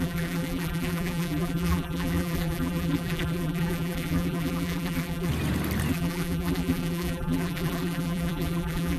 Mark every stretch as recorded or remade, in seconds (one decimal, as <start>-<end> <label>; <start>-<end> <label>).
0.0-5.3 remade; 5.3-5.9 recorded; 5.9-9.0 remade